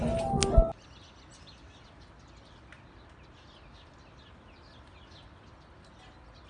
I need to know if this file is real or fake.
real